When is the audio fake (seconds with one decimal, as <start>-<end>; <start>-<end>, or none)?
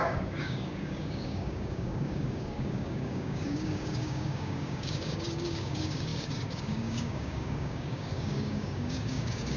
0.0-9.6